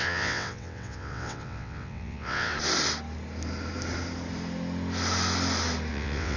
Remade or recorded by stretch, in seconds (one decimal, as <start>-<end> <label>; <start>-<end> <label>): 0.0-2.5 remade; 2.5-5.9 recorded; 5.9-6.4 remade